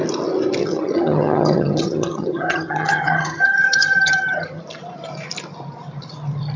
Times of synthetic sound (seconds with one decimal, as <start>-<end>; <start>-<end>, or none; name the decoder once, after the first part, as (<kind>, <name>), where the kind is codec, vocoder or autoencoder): 0.6-4.6 (vocoder, HiFi-GAN)